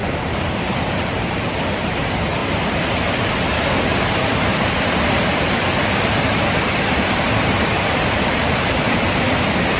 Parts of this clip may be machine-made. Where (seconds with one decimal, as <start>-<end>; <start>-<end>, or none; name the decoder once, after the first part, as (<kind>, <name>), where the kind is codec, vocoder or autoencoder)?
0.0-1.9 (vocoder, BigVGAN v2); 4.5-9.1

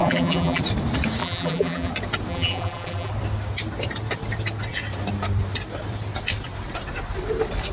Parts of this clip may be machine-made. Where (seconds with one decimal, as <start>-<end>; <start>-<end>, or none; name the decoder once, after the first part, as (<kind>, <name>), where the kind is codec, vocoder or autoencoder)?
0.0-0.6 (vocoder, BigVGAN v2); 1.2-1.9; 2.3-3.1

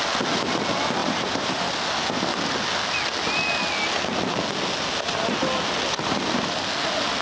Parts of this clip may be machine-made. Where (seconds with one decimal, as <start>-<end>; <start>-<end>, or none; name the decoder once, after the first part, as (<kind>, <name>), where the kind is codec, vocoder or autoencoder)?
1.0-1.6 (vocoder, BigVGAN v2)

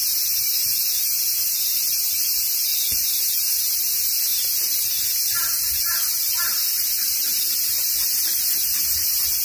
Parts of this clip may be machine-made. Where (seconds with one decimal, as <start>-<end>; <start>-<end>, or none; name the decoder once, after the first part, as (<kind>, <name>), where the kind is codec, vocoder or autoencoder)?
2.7-3.7 (vocoder, BigVGAN v2); 7.0-7.8